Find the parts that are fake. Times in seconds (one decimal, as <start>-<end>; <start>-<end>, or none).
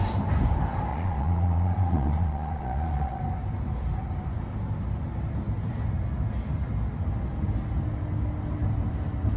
0.9-3.2